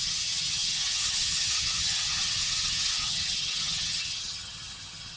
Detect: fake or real fake